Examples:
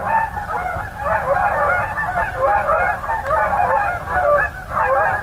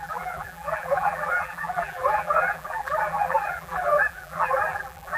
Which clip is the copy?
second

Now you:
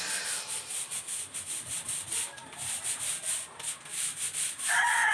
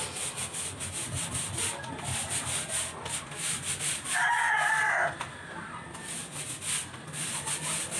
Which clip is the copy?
first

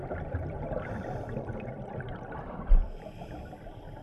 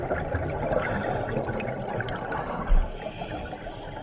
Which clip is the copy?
first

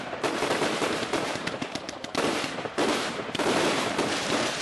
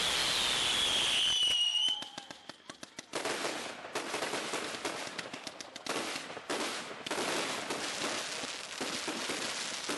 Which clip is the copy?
first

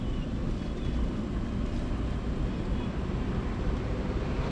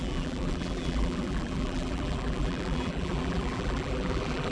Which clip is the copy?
second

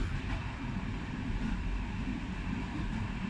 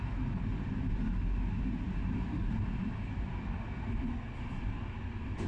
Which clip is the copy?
first